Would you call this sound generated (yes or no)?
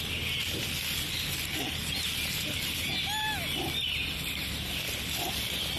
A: no